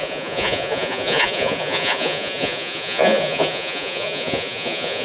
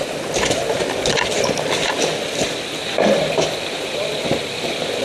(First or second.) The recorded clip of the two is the second